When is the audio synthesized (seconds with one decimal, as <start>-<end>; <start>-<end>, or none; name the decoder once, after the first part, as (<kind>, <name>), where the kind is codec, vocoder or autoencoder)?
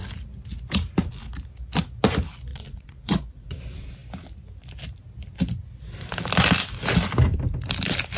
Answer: 2.5-3.6 (vocoder, Vocos)